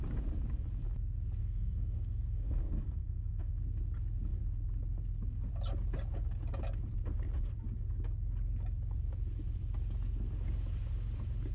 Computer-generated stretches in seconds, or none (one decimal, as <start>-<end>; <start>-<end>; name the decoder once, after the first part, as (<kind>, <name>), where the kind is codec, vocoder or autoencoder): 1.4-3.6 (codec, SNAC)